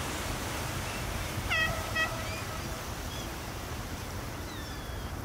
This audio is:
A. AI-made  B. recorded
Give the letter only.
A